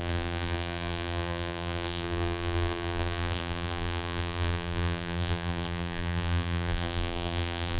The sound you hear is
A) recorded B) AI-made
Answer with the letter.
B